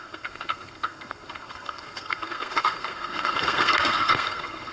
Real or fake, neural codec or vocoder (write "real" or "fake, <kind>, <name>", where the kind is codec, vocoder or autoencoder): fake, codec, SNAC